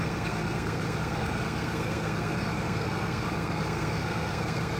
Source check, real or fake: fake